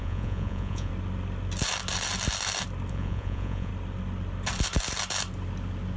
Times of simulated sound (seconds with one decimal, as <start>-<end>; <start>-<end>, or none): 0.0-0.9; 2.9-3.7